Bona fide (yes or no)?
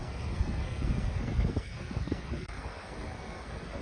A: no